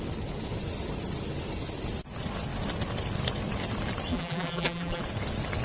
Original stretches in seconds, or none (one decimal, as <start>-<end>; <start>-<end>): 0.0-4.1; 5.0-5.6